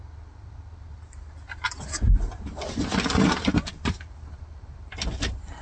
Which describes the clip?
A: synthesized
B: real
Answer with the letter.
B